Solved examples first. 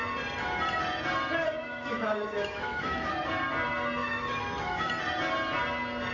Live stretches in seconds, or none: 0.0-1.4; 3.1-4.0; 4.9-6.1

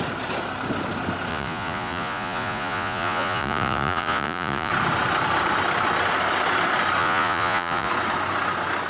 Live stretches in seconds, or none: 0.0-1.3; 4.7-7.0; 7.9-8.9

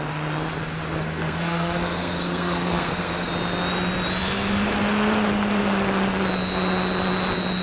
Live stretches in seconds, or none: 0.0-1.0; 3.3-7.6

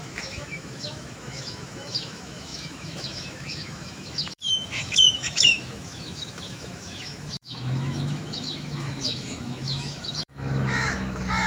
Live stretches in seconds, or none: none